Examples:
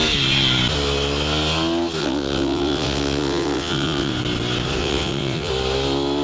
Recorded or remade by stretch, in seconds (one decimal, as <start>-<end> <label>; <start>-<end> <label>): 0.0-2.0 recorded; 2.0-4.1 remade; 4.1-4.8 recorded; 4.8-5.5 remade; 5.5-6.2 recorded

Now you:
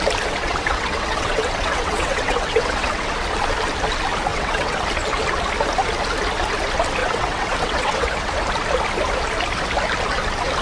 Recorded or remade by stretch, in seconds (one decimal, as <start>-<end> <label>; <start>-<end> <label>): 0.0-0.4 recorded; 0.4-3.1 remade; 3.1-4.3 recorded; 4.3-4.8 remade; 4.8-7.0 recorded; 7.0-8.3 remade; 8.3-10.6 recorded

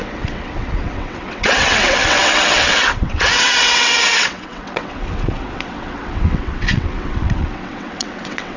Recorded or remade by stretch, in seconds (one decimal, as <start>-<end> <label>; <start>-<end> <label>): 0.0-8.6 remade